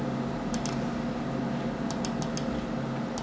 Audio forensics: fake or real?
real